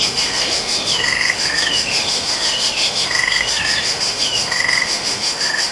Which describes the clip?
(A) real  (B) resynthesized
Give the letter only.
B